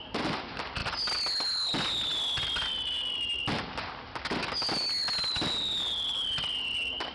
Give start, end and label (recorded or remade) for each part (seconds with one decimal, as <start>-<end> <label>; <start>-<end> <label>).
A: 0.0-7.1 recorded